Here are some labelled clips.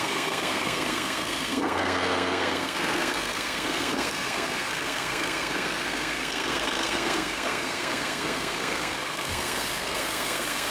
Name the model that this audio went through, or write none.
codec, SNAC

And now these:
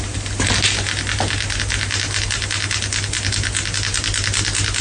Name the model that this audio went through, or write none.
none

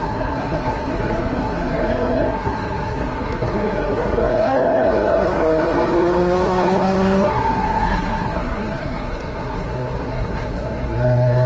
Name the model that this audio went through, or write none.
codec, SNAC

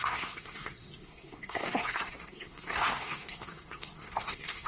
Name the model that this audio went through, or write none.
codec, SNAC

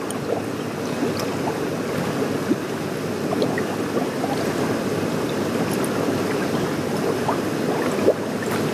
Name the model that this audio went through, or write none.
none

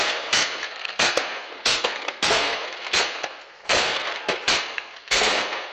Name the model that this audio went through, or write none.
codec, SNAC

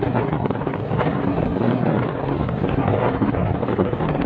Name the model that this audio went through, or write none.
codec, SNAC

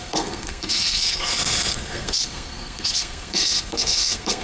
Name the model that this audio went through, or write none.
codec, SNAC